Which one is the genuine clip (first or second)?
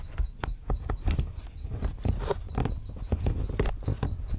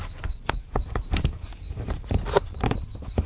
first